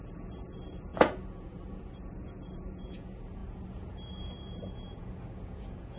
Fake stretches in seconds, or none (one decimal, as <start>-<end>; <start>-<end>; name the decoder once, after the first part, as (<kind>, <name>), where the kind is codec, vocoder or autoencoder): 0.0-6.0 (vocoder, Vocos)